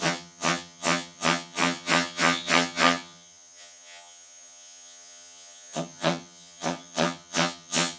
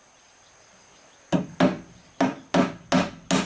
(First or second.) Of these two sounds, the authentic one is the second